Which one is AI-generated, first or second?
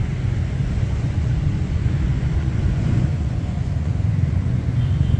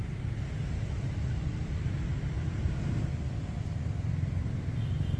first